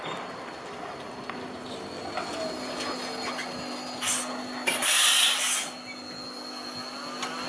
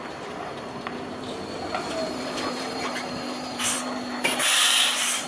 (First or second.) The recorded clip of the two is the first